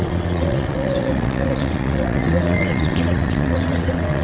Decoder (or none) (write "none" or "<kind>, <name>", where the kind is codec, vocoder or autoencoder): vocoder, WaveNeXt